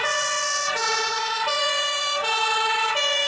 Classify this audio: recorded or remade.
remade